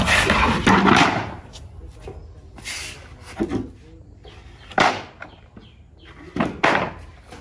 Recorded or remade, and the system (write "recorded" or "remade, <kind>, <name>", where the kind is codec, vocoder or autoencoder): recorded